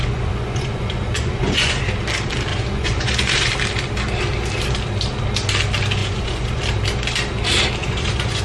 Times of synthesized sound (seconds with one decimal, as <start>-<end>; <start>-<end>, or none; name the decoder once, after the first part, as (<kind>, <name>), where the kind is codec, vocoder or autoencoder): 0.0-1.8 (vocoder, Vocos); 2.5-3.3; 6.0-6.6; 7.8-8.4